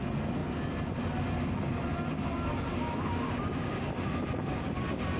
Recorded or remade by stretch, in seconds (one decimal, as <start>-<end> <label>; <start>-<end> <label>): 0.0-1.9 recorded; 1.9-3.9 remade; 3.9-5.2 recorded